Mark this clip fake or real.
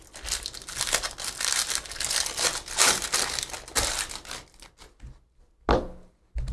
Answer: real